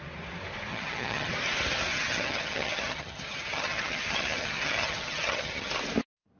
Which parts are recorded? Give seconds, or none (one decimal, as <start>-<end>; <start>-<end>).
0.0-0.7; 1.3-1.9; 5.7-6.4